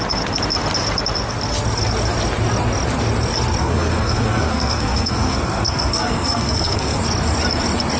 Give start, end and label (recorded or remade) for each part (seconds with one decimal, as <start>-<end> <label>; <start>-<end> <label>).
0.0-3.6 recorded; 3.6-7.0 remade; 7.0-8.0 recorded